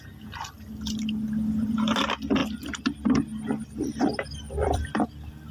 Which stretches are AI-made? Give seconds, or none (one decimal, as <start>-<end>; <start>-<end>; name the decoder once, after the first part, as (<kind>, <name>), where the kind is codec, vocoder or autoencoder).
0.0-5.5 (vocoder, BigVGAN v2)